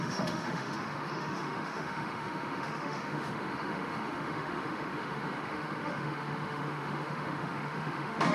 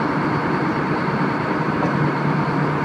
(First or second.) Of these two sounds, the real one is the second